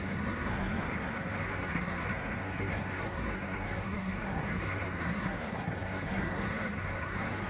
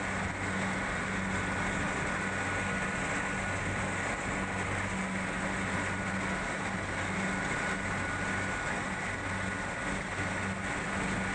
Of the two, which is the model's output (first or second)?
first